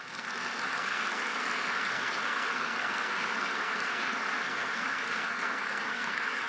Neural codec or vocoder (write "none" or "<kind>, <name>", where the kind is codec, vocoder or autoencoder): codec, SNAC